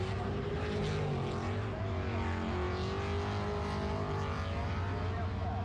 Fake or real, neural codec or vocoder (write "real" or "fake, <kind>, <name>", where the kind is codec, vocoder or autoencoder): real